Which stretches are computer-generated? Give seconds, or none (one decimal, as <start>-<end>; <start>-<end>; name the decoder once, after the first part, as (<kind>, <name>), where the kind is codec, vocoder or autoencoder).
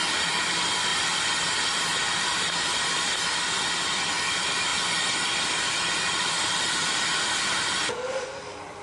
0.0-0.9 (vocoder, BigVGAN v2); 1.6-8.8